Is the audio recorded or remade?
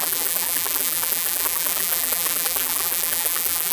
remade